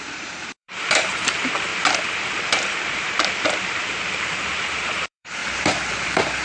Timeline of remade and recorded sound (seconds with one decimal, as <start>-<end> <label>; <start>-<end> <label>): 0.0-1.7 remade; 1.7-4.1 recorded; 4.1-5.4 remade; 5.4-5.9 recorded; 5.9-6.4 remade